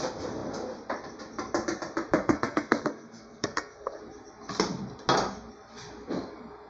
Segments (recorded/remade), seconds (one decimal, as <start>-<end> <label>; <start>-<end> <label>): 0.0-2.2 recorded; 2.2-4.0 remade; 4.0-6.7 recorded